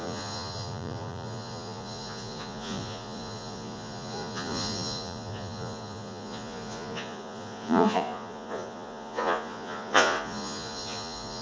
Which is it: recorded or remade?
remade